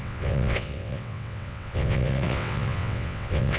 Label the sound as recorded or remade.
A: remade